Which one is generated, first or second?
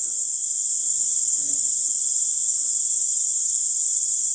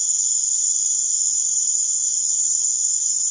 first